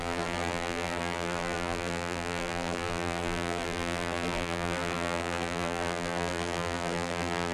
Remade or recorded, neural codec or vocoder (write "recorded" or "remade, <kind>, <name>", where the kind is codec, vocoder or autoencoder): remade, vocoder, BigVGAN v2